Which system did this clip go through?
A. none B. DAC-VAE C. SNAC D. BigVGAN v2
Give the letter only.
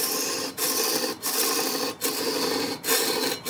A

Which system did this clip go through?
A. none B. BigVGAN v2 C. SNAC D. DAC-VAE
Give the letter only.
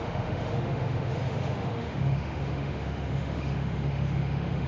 D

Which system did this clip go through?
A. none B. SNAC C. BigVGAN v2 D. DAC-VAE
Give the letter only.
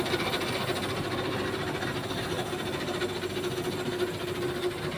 A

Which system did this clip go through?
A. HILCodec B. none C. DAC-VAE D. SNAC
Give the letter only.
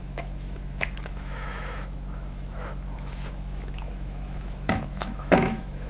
C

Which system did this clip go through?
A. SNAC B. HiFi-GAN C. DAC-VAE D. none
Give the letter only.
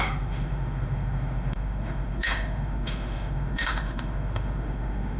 C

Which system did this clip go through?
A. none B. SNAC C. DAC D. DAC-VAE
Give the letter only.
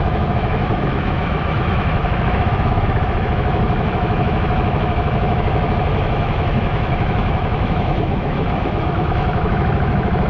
D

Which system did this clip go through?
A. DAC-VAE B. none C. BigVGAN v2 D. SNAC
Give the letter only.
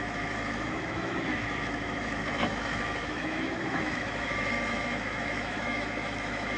A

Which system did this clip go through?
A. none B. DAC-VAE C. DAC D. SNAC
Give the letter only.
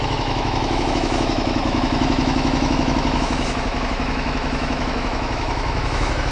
B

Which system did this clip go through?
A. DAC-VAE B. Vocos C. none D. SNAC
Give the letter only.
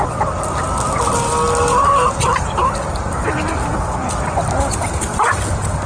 C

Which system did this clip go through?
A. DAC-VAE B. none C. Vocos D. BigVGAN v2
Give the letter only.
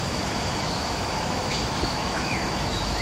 A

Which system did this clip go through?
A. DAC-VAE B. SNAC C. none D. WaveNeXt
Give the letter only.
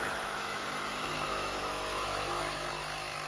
A